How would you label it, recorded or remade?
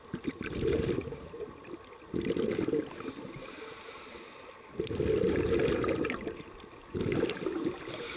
recorded